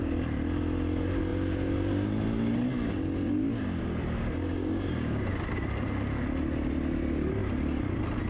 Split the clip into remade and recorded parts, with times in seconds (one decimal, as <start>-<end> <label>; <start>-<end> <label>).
0.0-4.6 recorded; 4.6-5.3 remade; 5.3-8.3 recorded